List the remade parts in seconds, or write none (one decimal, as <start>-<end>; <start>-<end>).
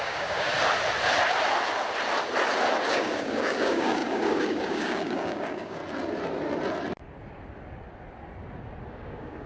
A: 0.0-0.5; 2.9-5.8; 8.9-9.5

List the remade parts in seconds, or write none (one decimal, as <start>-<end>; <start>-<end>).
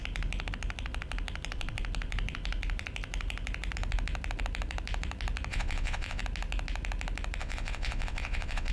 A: 5.5-6.2; 7.4-8.7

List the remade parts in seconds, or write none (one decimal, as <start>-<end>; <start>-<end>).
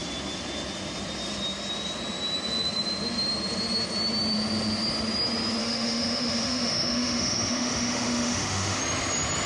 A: 5.6-8.8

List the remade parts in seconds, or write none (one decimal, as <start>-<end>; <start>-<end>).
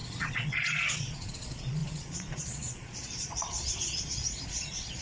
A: 0.0-5.0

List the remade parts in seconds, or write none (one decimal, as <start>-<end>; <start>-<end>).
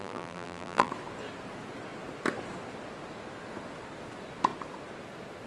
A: 0.0-0.9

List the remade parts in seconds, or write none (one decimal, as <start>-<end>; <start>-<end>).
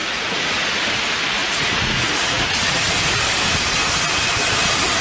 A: 0.0-0.7; 1.4-2.7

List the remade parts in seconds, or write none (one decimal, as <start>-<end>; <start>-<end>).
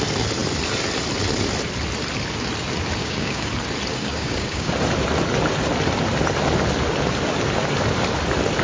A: 3.0-3.5; 3.9-4.7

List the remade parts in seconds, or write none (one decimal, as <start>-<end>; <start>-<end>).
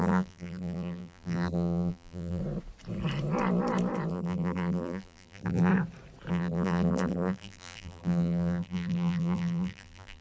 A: 0.0-2.4; 4.1-5.7; 6.3-10.2